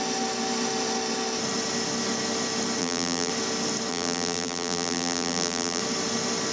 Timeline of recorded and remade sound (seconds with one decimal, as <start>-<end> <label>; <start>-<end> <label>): 0.0-2.8 recorded; 2.8-3.3 remade; 3.3-3.9 recorded; 3.9-5.8 remade; 5.8-6.5 recorded